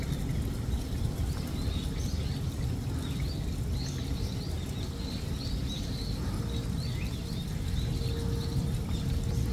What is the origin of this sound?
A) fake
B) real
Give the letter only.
B